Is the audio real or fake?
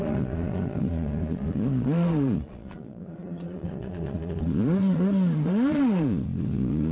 fake